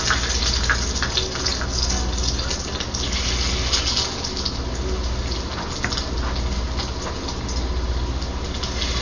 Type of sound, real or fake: real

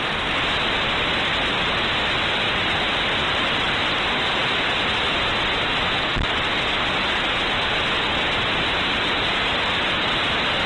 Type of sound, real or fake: real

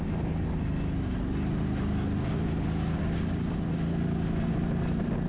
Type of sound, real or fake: real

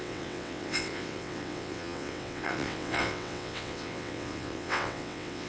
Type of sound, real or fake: fake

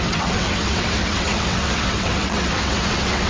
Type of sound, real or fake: fake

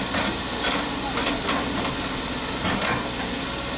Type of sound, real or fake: real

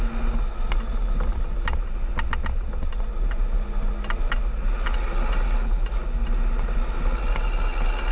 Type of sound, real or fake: real